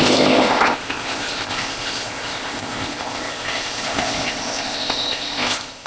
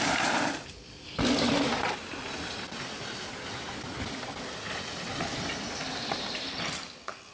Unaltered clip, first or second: second